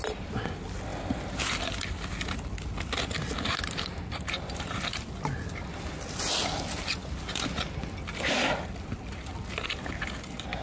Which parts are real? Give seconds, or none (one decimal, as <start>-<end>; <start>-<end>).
0.0-10.6

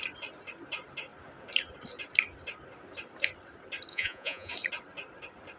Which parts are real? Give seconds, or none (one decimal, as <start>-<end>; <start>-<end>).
0.0-3.9; 4.5-5.6